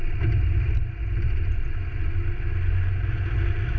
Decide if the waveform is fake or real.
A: real